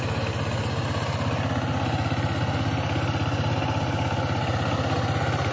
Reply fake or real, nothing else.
real